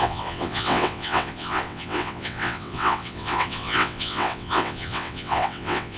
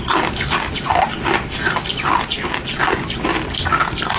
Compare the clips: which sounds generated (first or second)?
first